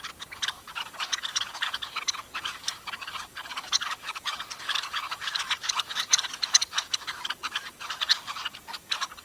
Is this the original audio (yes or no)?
no